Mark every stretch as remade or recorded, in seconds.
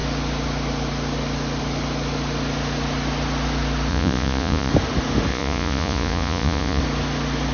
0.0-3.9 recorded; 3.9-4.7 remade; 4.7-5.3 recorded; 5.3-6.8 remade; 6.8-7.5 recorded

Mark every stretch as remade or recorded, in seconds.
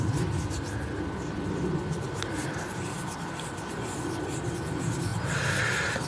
0.0-6.1 recorded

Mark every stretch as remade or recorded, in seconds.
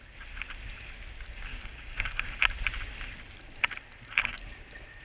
0.0-1.5 recorded; 1.5-2.3 remade; 2.3-5.0 recorded